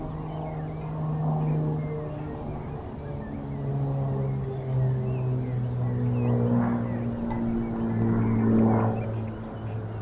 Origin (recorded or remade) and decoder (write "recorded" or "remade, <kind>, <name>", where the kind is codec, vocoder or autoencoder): recorded